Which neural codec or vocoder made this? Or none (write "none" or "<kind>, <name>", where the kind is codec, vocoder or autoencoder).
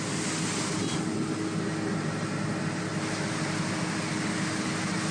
none